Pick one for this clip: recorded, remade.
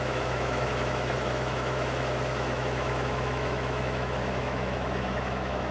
remade